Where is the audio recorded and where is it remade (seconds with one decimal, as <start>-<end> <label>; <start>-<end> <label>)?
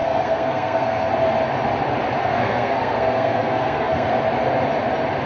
0.0-1.1 remade; 1.1-2.2 recorded; 2.2-4.1 remade; 4.1-5.3 recorded